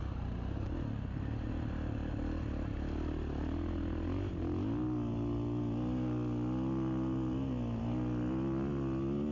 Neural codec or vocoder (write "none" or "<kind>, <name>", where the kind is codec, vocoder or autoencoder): none